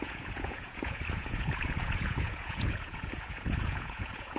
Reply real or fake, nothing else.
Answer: fake